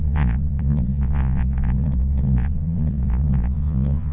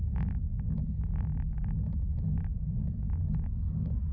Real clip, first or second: second